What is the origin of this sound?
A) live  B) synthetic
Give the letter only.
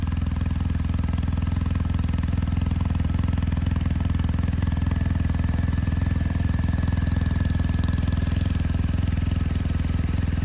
B